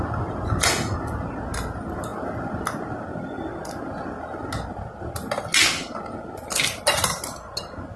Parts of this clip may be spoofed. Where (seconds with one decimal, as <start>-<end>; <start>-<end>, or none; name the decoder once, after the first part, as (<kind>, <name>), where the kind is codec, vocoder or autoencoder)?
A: none